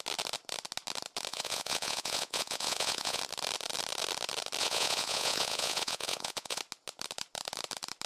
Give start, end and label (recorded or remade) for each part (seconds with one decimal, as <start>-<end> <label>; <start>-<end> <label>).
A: 0.0-1.3 recorded; 1.3-3.2 remade; 3.2-4.6 recorded; 4.6-6.6 remade; 6.6-8.1 recorded